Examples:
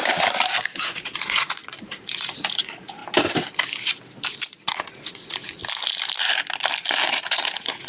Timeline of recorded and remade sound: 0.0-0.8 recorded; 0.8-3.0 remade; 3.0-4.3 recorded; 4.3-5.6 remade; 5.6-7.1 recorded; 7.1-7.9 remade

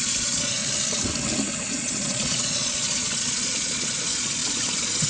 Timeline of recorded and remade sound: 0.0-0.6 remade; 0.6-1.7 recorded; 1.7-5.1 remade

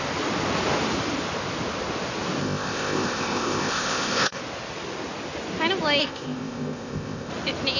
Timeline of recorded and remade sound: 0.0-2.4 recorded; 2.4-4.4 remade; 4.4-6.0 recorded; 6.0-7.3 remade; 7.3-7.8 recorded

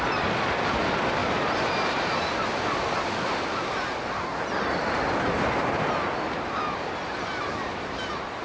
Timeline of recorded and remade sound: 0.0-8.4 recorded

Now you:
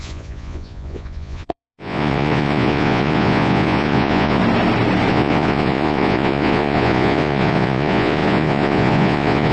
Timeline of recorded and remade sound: 0.0-4.4 remade; 4.4-5.1 recorded; 5.1-9.5 remade